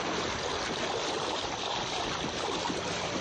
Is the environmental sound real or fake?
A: real